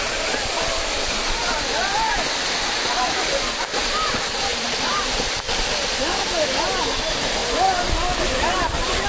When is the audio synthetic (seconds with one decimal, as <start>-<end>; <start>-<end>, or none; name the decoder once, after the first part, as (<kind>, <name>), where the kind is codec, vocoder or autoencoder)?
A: 4.5-5.7 (vocoder, BigVGAN v2)